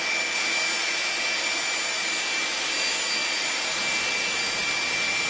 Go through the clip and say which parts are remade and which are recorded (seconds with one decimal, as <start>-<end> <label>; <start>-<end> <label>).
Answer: 0.0-5.3 recorded